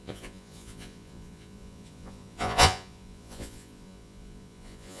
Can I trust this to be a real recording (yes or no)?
no